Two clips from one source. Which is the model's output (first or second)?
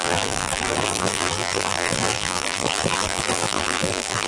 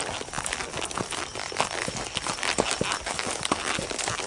first